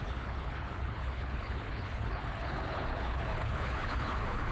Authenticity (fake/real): fake